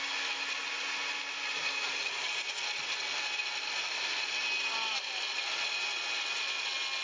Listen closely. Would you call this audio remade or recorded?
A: recorded